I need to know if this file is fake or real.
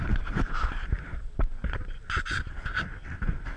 real